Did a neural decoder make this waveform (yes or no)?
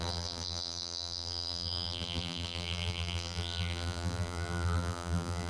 yes